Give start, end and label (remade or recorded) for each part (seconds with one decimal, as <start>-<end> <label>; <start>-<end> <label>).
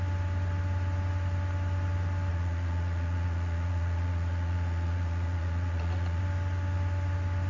0.0-2.3 recorded; 2.3-6.2 remade; 6.2-7.5 recorded